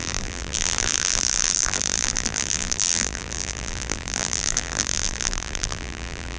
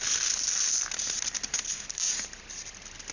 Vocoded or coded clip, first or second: first